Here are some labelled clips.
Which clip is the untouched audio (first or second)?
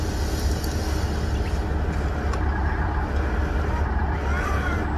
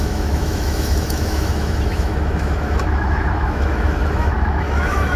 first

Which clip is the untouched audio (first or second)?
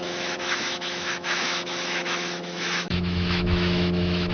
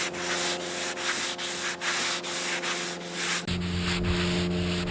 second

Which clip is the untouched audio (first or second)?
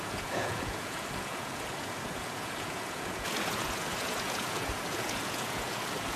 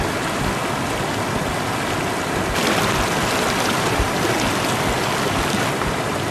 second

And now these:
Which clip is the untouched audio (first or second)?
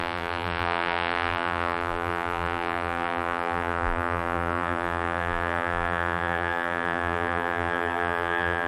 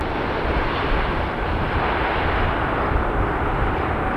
second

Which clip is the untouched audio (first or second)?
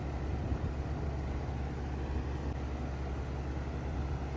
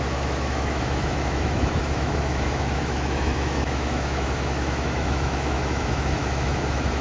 first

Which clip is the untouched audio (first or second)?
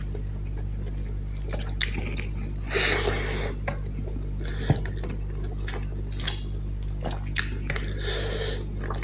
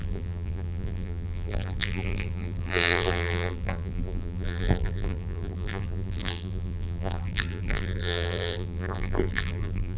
first